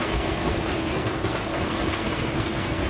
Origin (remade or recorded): remade